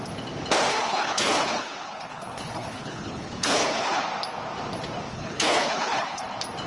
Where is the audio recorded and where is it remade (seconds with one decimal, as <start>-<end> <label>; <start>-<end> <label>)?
0.0-0.7 recorded; 0.7-4.0 remade; 4.0-5.1 recorded; 5.1-6.2 remade; 6.2-6.7 recorded